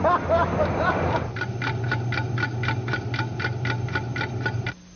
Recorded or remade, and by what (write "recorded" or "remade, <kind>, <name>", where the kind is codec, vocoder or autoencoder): recorded